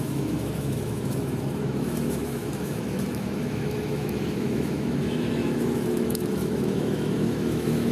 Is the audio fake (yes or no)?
yes